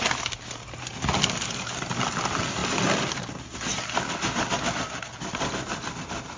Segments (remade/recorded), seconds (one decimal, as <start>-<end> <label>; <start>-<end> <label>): 0.0-6.4 recorded